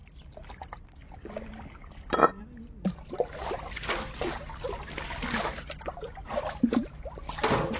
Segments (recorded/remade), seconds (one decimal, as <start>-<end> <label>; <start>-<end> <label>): 0.0-7.8 recorded